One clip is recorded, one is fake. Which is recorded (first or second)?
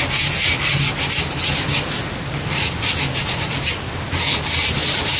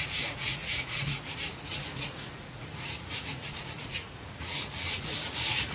first